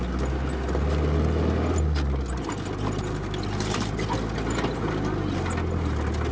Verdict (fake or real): real